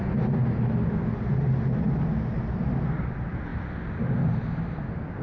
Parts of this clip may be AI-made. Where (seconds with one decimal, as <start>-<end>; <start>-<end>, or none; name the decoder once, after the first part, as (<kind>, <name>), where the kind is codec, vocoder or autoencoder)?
none